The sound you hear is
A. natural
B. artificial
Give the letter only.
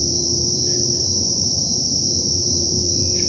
B